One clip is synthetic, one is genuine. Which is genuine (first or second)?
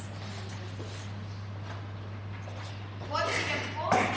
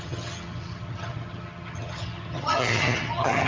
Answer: first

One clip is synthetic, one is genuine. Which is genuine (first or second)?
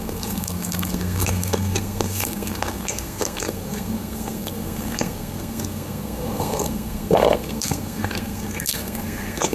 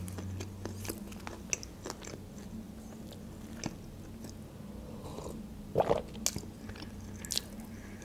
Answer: second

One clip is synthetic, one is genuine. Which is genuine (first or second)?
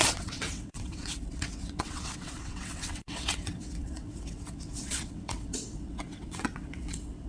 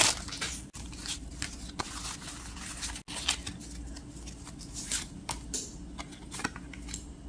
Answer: second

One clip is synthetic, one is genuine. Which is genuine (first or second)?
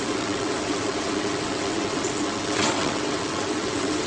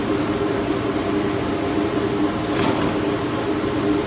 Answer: second